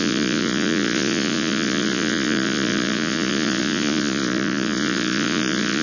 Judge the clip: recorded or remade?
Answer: remade